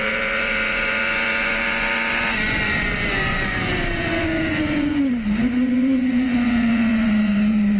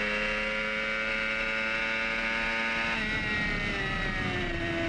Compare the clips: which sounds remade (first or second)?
first